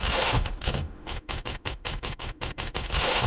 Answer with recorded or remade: remade